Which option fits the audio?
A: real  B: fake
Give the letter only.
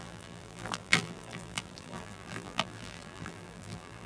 B